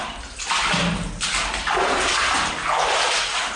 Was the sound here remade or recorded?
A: recorded